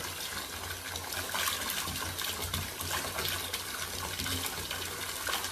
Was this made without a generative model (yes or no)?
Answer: yes